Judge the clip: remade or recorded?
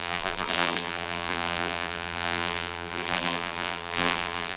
remade